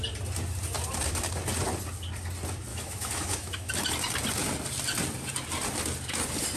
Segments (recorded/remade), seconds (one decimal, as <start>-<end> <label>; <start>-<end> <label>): 0.0-2.7 recorded; 2.7-3.7 remade; 3.7-6.6 recorded